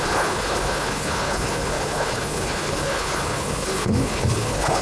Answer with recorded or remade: remade